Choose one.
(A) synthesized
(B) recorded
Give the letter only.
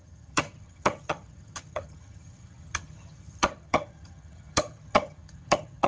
A